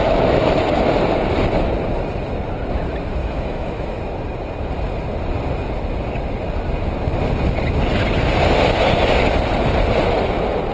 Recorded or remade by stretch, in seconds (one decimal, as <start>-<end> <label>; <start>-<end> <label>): 0.0-3.2 recorded; 3.2-4.0 remade; 4.0-10.7 recorded